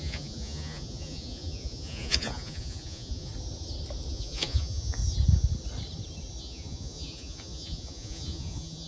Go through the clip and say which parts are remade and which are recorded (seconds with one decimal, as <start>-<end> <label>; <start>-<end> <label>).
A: 0.0-3.3 remade; 3.3-4.1 recorded; 4.1-5.0 remade; 5.0-6.4 recorded; 6.4-8.9 remade